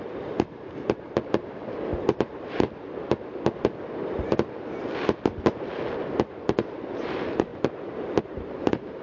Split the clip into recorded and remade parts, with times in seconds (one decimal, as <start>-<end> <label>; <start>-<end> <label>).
0.0-1.9 remade; 1.9-6.3 recorded; 6.3-7.5 remade; 7.5-8.2 recorded; 8.2-9.0 remade